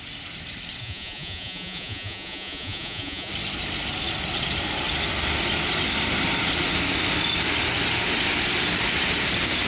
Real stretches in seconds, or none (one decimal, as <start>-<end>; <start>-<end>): 0.0-0.8; 3.3-9.7